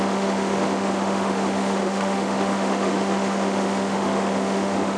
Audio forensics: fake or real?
fake